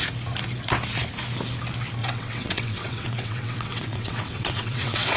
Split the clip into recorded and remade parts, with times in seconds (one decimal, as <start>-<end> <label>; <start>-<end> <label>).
0.0-2.0 recorded; 2.0-5.2 remade